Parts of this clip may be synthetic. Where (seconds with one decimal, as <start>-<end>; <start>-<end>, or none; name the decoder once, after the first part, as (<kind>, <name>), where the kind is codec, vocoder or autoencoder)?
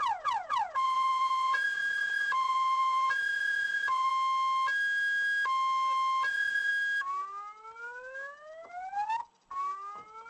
0.0-4.1 (vocoder, Vocos); 6.3-6.7